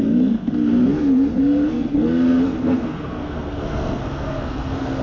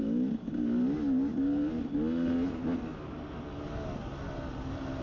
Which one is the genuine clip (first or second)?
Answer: second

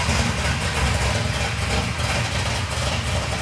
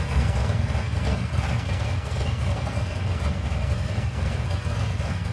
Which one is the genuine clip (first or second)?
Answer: first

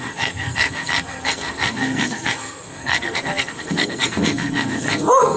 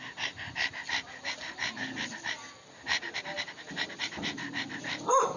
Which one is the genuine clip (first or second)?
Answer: second